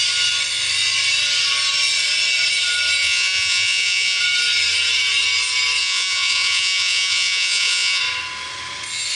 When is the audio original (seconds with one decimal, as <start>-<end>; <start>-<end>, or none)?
0.0-3.0; 4.2-5.8; 8.0-9.2